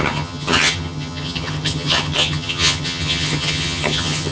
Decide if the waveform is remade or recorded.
remade